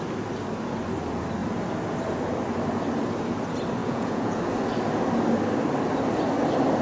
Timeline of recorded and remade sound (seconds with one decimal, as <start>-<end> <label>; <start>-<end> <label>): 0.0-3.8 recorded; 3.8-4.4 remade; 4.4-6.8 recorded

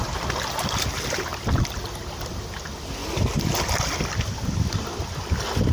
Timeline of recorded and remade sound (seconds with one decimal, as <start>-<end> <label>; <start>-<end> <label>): 0.0-5.7 recorded

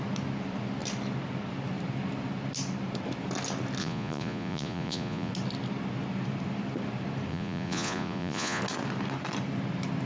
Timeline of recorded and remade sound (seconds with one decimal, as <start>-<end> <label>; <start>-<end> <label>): 0.0-3.8 recorded; 3.8-5.3 remade; 5.3-7.3 recorded; 7.3-8.6 remade; 8.6-10.1 recorded

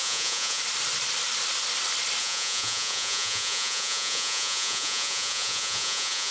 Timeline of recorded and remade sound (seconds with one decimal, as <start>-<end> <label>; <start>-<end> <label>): 0.0-0.6 remade; 0.6-2.2 recorded; 2.2-6.3 remade

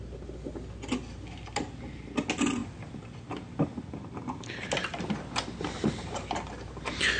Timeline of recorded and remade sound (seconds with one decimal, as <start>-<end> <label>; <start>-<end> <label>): 0.0-7.2 recorded

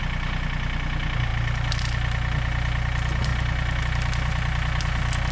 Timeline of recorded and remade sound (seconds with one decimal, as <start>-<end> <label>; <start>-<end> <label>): 0.0-5.3 recorded